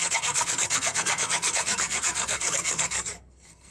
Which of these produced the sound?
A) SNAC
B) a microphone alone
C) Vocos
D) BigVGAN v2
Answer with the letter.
A